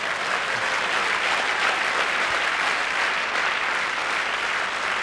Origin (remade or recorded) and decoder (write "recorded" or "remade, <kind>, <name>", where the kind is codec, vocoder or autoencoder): recorded